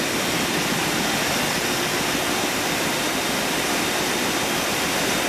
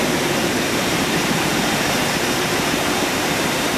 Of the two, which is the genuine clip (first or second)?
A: first